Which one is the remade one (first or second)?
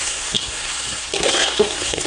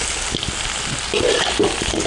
first